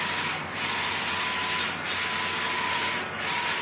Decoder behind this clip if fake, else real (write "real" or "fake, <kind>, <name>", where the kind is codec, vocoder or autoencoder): real